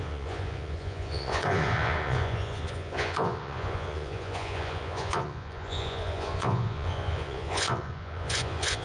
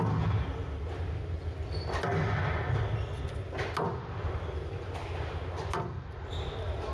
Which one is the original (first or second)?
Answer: second